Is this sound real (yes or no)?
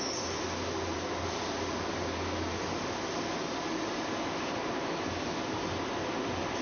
yes